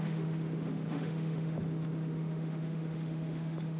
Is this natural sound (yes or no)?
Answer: no